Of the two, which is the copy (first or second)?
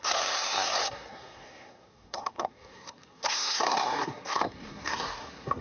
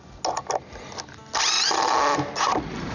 first